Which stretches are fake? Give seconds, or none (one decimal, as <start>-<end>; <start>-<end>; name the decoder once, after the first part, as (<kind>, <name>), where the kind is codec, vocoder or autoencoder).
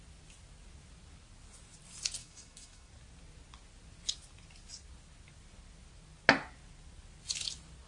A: 2.2-2.9 (autoencoder, DAC-VAE)